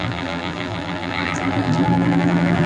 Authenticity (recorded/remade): remade